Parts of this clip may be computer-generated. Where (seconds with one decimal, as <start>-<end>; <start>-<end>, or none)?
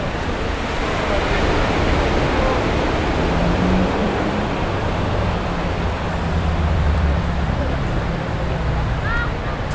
4.0-8.7